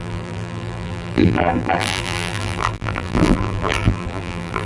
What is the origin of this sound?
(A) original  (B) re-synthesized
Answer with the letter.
B